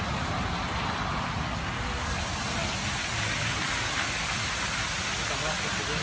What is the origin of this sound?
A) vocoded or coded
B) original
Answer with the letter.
B